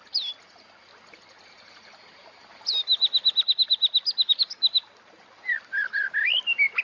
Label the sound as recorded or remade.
recorded